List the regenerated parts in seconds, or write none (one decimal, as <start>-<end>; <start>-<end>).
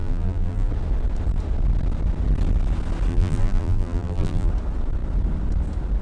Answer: 0.0-0.7; 3.1-4.5